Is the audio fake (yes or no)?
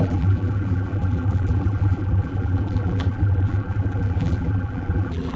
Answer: yes